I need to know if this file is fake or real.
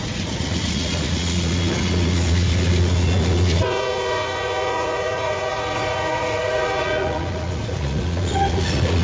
fake